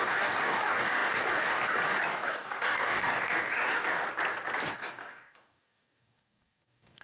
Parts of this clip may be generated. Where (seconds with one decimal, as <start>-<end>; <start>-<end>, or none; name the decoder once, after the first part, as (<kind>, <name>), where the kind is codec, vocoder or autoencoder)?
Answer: 0.0-4.0 (codec, DAC); 4.7-7.0